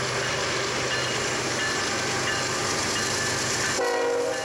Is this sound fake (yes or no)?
no